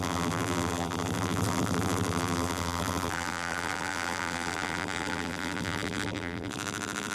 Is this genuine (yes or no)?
no